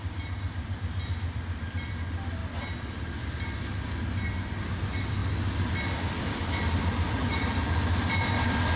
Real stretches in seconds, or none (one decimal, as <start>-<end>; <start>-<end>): 2.4-4.3; 5.2-6.2